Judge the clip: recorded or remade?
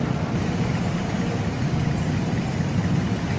recorded